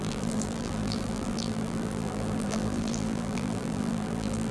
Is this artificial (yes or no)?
yes